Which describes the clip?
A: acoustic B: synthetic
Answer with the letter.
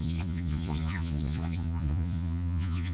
B